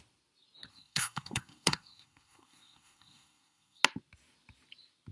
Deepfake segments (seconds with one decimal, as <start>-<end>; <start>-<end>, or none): 0.7-3.8